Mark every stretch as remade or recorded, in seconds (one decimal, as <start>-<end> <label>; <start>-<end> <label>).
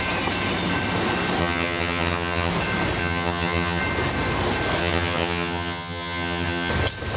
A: 0.0-1.4 recorded; 1.4-2.5 remade; 2.5-3.0 recorded; 3.0-3.8 remade; 3.8-4.8 recorded; 4.8-6.7 remade; 6.7-7.2 recorded